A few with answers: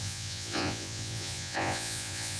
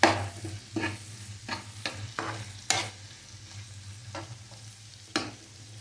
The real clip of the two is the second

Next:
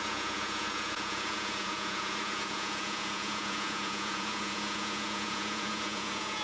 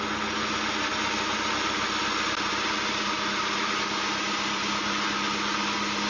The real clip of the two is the second